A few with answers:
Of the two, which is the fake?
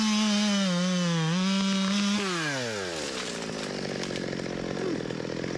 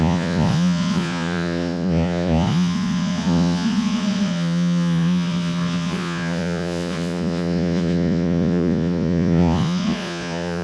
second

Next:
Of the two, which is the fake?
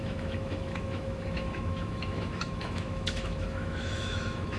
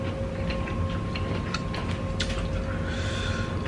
first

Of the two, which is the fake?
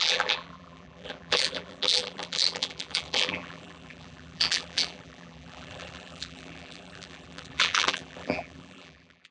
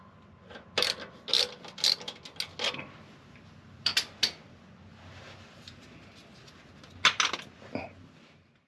first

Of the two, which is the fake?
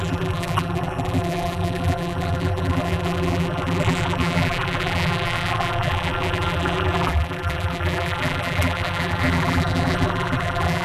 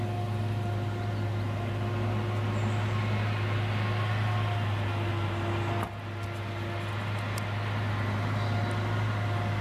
first